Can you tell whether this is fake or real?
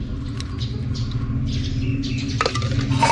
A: real